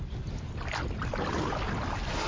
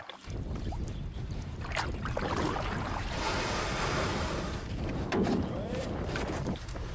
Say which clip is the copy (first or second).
second